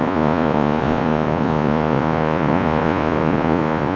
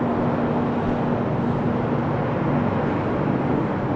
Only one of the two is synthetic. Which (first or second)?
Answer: first